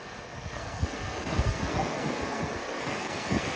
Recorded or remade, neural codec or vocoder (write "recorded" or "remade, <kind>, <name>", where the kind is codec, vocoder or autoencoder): remade, codec, SNAC